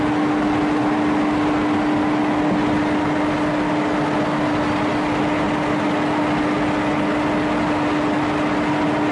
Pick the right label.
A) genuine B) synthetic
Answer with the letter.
A